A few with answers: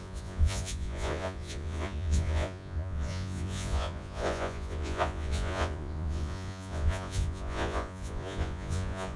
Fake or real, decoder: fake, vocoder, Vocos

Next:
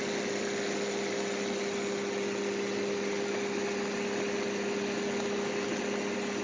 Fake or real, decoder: real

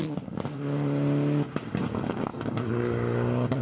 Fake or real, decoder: real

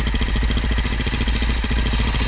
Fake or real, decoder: real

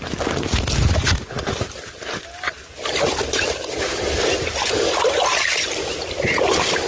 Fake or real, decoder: real